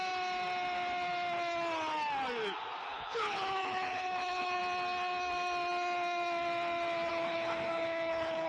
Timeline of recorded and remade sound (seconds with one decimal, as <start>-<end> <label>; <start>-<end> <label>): 0.0-2.8 recorded; 2.8-4.6 remade; 4.6-7.1 recorded; 7.1-8.5 remade